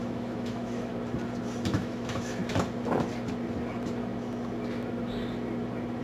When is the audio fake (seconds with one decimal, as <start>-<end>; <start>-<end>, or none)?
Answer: 0.0-0.9; 1.7-2.4